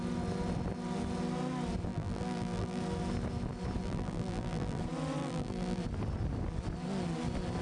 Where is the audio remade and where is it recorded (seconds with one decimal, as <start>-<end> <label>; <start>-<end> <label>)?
0.0-1.9 recorded; 1.9-2.8 remade; 2.8-3.8 recorded; 3.8-4.8 remade; 4.8-5.2 recorded; 5.2-5.8 remade; 5.8-7.6 recorded